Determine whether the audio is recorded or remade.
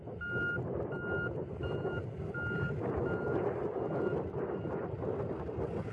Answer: recorded